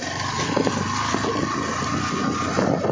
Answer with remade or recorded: recorded